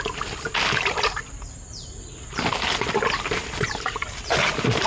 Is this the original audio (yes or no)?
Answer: yes